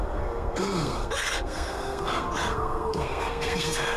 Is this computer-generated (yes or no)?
yes